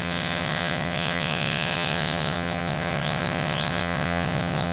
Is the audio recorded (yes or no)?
no